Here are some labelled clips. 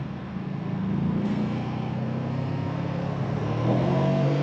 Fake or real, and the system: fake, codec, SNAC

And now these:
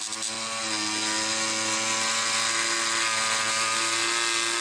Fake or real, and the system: real